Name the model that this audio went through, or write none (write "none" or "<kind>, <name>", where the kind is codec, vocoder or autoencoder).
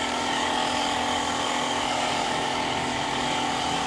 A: codec, DAC